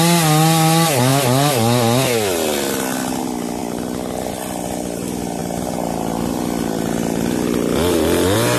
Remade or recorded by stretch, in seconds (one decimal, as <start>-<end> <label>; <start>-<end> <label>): 0.0-8.6 recorded